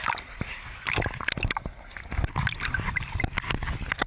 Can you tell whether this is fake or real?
real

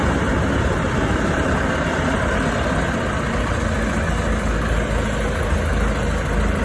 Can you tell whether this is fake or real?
real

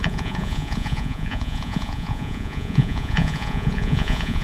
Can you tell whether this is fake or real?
fake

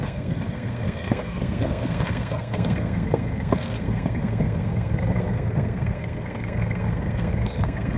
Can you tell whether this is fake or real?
fake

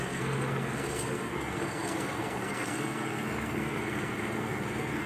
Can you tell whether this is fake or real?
fake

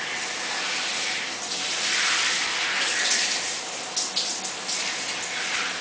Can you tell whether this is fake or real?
real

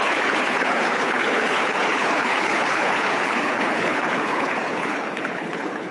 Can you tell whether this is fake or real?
fake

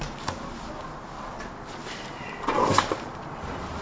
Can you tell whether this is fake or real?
real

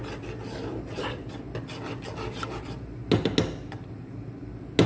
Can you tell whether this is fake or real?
real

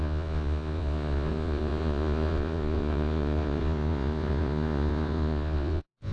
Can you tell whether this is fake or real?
fake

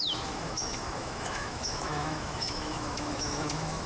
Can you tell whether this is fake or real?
fake